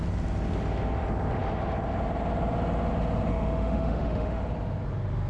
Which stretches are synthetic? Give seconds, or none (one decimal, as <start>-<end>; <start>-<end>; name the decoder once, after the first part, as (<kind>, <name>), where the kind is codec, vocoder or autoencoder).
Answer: 3.3-4.4 (autoencoder, DAC-VAE)